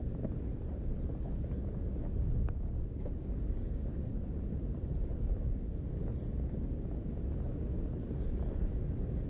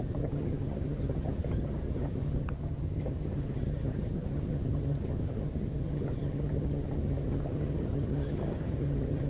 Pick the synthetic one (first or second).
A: second